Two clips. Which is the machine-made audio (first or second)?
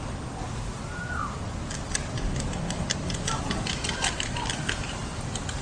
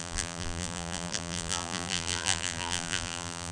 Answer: second